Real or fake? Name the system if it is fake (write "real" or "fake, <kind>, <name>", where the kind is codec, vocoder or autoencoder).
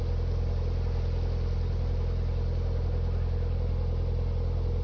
real